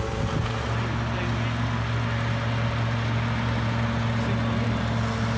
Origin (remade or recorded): recorded